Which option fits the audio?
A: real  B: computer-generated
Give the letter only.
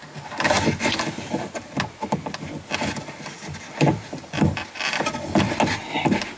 A